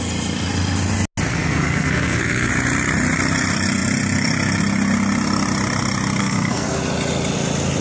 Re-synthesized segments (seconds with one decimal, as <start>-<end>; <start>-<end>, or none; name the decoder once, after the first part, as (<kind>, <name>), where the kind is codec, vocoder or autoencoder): 1.3-2.5 (codec, SNAC); 6.2-6.8